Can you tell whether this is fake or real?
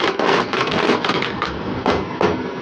fake